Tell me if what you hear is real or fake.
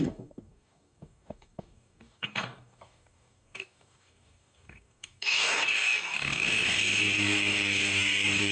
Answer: fake